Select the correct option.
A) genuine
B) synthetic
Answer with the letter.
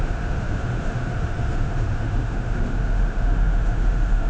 B